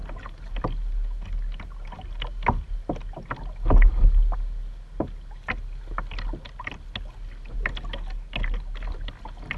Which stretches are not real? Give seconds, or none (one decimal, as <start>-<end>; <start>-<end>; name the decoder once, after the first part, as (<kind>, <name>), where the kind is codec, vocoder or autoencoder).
none